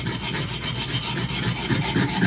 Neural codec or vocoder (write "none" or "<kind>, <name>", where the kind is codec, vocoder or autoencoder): none